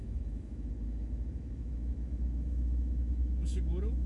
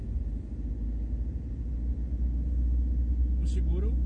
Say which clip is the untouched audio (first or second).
second